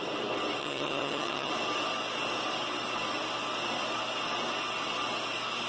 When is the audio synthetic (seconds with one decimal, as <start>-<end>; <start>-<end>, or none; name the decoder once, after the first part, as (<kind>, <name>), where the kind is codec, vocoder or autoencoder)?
0.6-1.5 (vocoder, HiFi-GAN)